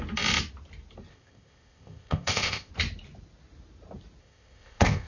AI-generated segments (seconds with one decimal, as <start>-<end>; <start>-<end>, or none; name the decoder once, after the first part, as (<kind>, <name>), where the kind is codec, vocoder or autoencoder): 1.1-2.7 (codec, ZipCodec); 4.2-5.1